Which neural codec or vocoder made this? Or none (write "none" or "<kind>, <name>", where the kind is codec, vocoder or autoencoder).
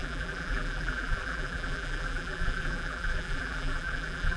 vocoder, BigVGAN v2